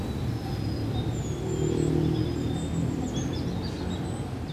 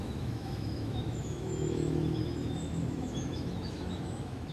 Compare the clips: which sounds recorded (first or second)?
first